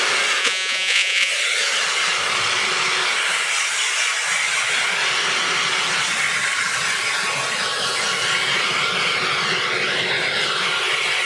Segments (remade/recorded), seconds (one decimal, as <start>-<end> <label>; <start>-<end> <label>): 0.0-0.4 recorded; 0.4-1.3 remade; 1.3-11.3 recorded